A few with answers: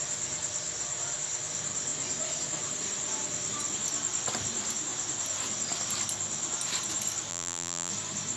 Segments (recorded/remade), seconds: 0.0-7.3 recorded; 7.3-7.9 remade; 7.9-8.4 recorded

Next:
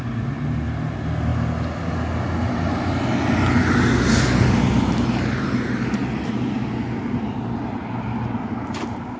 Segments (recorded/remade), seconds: 0.0-9.2 recorded